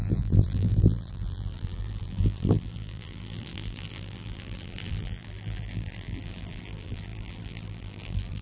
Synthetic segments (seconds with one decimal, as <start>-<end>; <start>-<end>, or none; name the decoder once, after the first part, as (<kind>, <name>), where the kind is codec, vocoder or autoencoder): 0.0-8.4 (vocoder, BigVGAN v2)